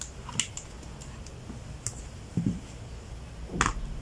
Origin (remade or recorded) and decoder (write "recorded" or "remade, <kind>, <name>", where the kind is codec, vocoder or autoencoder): recorded